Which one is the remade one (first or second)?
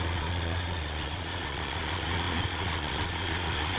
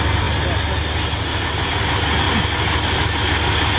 first